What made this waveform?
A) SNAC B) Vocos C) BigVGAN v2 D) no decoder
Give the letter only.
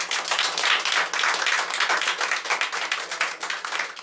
D